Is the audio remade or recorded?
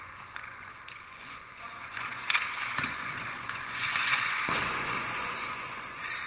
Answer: remade